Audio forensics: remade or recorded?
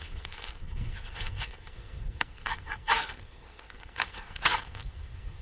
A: remade